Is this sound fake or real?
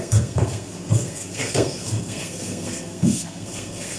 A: fake